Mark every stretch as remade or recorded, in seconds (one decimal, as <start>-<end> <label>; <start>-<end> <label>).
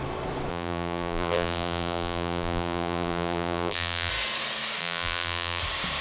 0.0-0.5 recorded; 0.5-4.1 remade; 4.1-4.8 recorded; 4.8-5.6 remade; 5.6-6.0 recorded